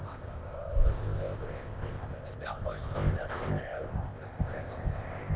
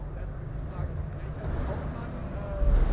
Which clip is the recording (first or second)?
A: second